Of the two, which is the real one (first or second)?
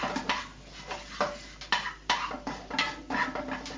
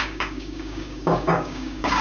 first